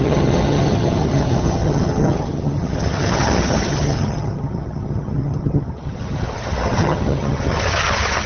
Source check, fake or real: fake